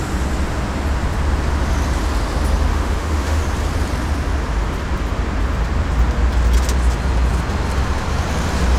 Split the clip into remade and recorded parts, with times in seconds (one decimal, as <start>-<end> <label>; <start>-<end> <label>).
0.0-2.7 recorded; 2.7-3.4 remade; 3.4-8.8 recorded